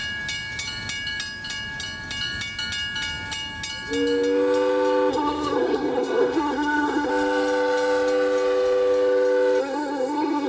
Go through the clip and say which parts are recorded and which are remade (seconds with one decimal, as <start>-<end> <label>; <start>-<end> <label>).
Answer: 0.0-5.1 recorded; 5.1-7.1 remade; 7.1-9.6 recorded; 9.6-10.5 remade